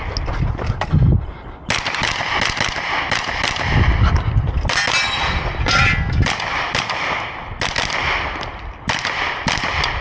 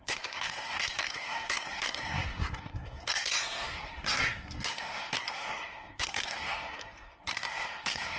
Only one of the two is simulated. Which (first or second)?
second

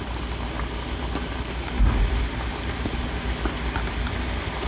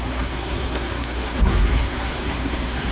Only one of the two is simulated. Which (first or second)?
second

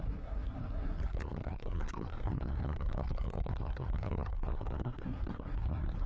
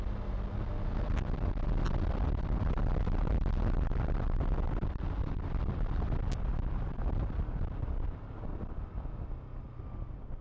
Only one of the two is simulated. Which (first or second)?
first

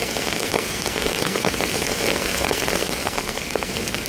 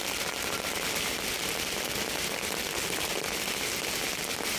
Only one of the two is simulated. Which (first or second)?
first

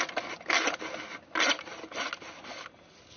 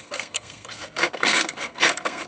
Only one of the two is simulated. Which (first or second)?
second